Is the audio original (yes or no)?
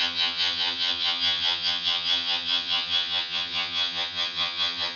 no